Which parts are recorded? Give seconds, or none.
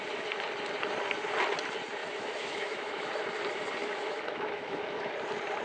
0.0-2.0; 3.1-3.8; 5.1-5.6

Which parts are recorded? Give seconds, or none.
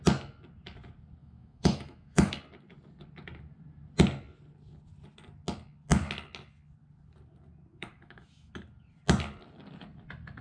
0.0-1.2; 2.3-7.7; 8.5-10.4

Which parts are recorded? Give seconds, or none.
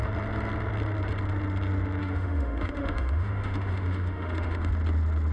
0.0-2.0; 4.7-5.3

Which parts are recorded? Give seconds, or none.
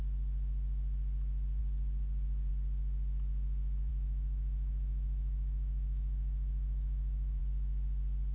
0.0-3.9; 7.4-8.3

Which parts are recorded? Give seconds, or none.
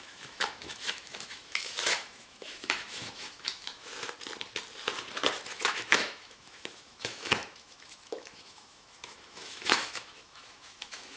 3.9-5.5